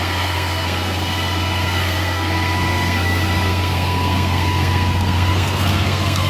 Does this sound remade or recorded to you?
remade